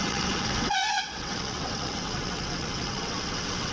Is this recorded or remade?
remade